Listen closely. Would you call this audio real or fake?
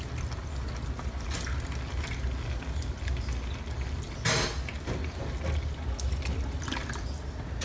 real